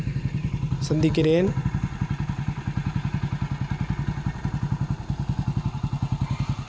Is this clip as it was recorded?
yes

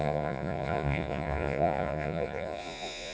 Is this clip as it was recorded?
no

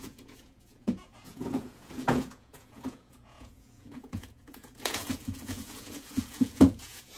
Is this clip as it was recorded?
no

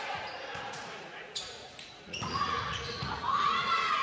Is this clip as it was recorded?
no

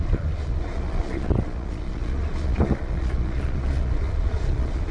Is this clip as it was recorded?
no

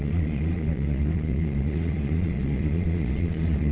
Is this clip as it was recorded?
no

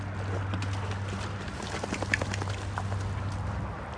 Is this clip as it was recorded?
yes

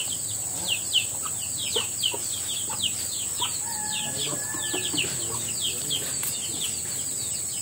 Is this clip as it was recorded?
yes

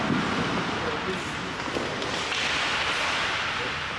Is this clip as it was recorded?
yes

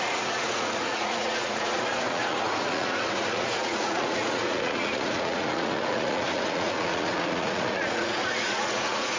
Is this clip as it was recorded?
no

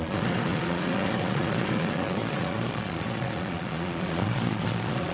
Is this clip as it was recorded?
no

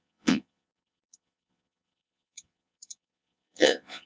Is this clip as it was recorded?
no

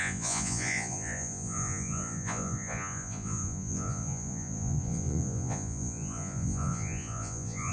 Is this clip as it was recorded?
no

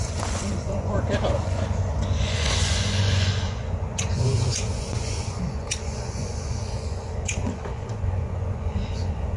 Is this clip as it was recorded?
no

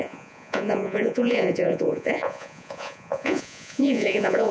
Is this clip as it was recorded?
no